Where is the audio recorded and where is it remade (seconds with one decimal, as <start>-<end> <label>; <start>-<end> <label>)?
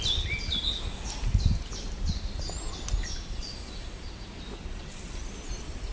0.0-5.9 recorded